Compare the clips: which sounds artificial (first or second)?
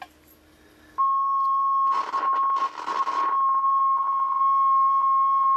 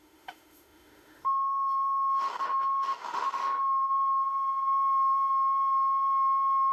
second